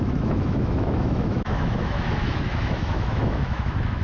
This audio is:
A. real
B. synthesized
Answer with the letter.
B